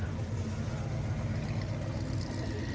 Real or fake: real